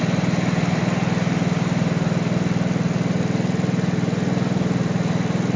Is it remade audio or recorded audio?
recorded